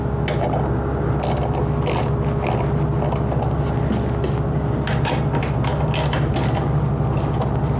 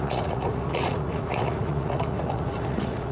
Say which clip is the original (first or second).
first